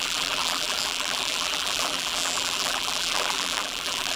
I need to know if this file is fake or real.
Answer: fake